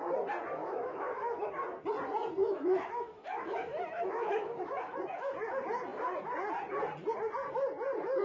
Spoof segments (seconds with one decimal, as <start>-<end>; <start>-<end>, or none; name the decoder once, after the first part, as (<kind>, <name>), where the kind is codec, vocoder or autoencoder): 0.6-1.5 (autoencoder, DAC-VAE); 2.4-5.3